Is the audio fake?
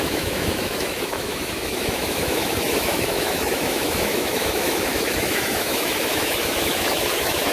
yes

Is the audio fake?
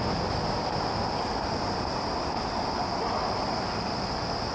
no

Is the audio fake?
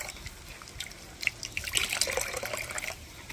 no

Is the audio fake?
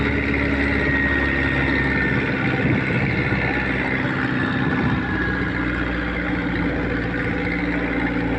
no